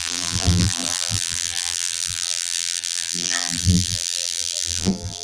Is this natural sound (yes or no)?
no